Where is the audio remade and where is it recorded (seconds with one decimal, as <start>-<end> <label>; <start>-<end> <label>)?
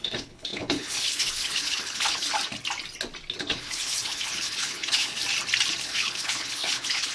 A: 0.0-2.3 remade; 2.3-3.4 recorded; 3.4-5.2 remade; 5.2-5.8 recorded; 5.8-7.1 remade